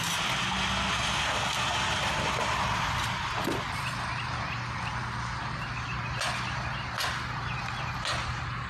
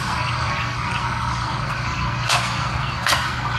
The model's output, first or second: second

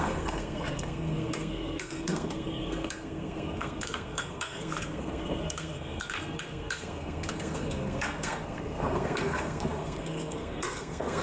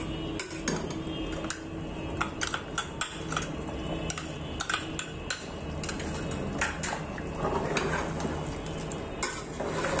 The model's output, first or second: first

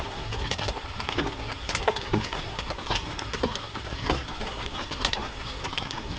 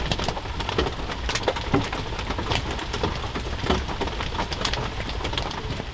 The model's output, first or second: first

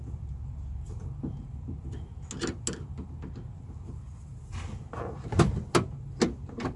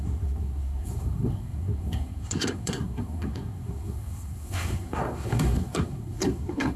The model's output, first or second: second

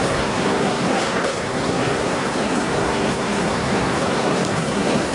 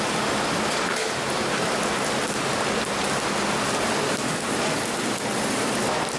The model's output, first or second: first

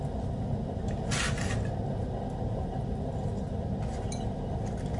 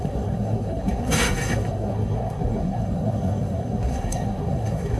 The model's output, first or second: second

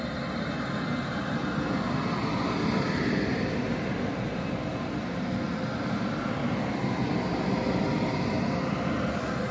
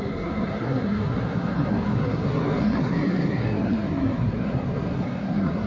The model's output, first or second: second